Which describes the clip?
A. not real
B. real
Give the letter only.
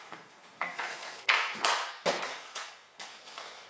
A